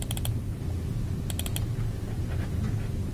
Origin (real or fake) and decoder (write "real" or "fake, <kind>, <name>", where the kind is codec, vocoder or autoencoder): real